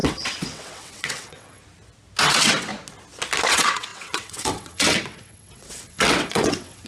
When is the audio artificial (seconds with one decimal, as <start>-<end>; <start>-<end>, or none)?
0.0-1.6; 2.2-2.7; 3.5-6.9

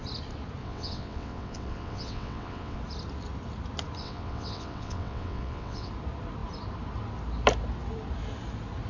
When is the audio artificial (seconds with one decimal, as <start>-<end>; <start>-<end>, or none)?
0.6-2.8; 4.0-5.9

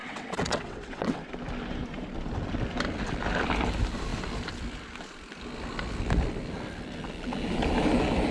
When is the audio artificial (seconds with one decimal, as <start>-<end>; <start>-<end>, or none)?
0.0-1.3

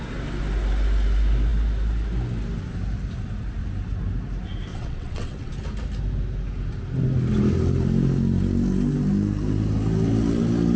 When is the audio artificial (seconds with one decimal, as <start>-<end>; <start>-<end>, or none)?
4.7-5.5

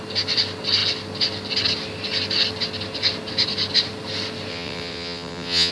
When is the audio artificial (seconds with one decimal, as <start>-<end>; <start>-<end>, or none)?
4.5-5.7

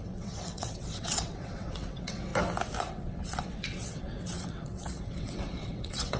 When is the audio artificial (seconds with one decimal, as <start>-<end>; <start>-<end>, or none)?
0.0-2.3; 2.9-6.2